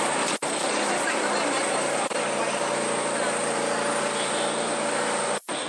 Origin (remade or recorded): recorded